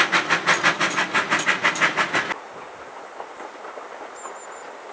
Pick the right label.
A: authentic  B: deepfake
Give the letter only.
A